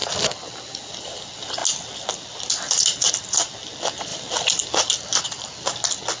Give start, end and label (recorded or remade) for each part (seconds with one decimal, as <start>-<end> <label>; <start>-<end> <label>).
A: 0.0-0.9 remade; 0.9-6.2 recorded